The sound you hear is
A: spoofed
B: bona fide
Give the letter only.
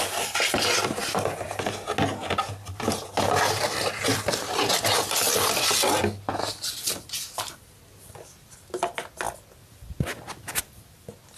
B